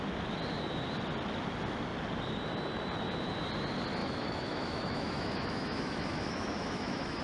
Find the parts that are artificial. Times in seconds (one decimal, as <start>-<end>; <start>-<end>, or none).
4.0-7.2